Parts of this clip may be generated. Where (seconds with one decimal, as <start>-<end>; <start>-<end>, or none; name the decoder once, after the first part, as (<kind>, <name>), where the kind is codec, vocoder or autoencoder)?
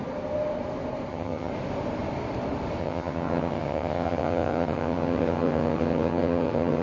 1.1-1.5 (vocoder, HiFi-GAN); 2.8-6.8